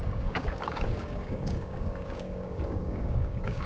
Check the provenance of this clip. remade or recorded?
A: remade